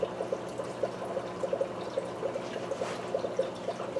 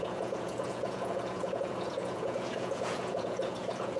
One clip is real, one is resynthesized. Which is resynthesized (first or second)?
second